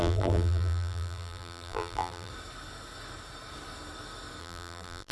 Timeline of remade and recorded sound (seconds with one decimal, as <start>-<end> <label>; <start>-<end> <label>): 0.0-2.3 remade; 2.3-4.4 recorded; 4.4-5.1 remade